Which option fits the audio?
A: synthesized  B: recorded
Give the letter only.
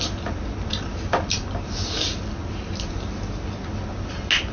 B